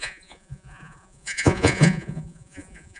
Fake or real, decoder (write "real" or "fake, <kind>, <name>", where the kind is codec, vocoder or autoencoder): fake, vocoder, Vocos